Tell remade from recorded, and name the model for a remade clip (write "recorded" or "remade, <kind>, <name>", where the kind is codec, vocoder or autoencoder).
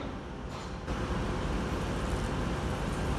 recorded